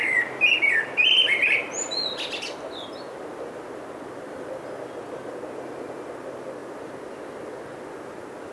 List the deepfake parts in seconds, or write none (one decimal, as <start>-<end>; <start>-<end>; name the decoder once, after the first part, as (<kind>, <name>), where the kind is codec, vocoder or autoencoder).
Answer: none